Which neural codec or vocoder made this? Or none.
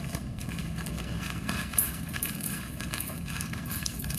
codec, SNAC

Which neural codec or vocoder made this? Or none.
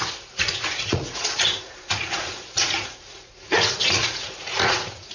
vocoder, Vocos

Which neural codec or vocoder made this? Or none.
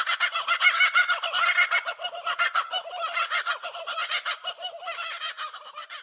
none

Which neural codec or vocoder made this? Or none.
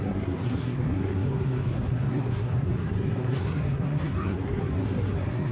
codec, SNAC